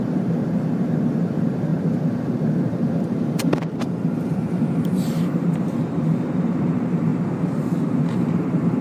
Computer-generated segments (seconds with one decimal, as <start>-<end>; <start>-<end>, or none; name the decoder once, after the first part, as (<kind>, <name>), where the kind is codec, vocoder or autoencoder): 0.0-8.8 (vocoder, BigVGAN v2)